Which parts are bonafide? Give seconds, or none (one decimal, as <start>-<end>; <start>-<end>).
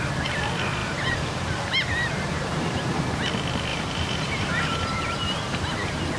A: 0.0-0.8; 3.0-3.7; 5.6-6.2